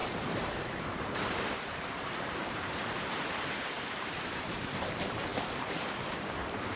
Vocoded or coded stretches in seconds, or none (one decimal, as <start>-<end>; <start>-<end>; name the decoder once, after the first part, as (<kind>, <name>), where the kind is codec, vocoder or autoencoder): 0.0-5.3 (vocoder, BigVGAN v2); 6.1-6.8

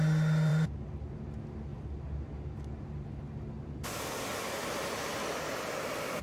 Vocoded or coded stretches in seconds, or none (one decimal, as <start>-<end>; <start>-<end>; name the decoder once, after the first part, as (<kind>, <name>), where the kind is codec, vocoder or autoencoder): 0.5-1.1 (vocoder, BigVGAN v2)

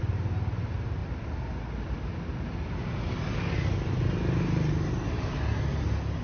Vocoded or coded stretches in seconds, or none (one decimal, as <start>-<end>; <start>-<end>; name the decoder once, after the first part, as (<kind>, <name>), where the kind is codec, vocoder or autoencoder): none

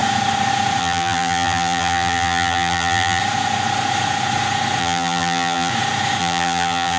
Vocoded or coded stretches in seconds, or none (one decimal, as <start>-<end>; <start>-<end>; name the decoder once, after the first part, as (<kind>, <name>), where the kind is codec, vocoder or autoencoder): 0.8-3.2 (vocoder, BigVGAN v2); 4.8-5.7; 6.2-7.0